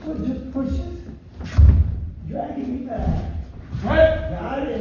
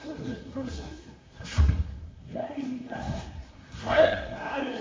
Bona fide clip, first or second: first